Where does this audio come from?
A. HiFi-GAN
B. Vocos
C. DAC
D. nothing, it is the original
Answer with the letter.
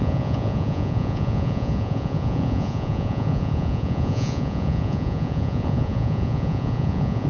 B